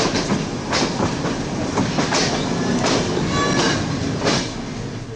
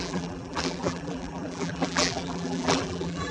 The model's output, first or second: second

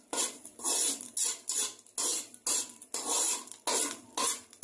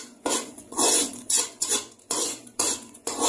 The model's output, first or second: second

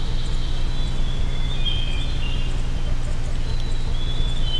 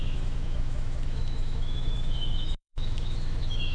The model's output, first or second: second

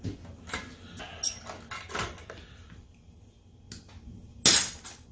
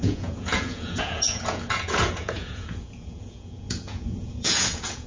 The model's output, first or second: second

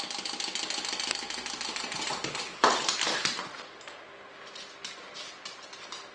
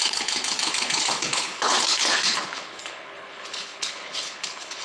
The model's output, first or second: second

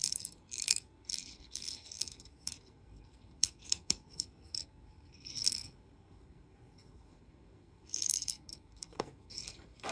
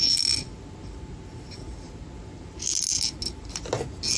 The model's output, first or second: first